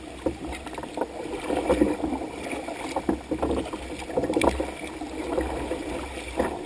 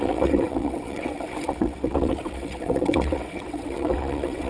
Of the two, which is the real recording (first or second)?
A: first